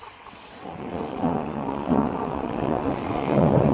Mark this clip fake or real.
fake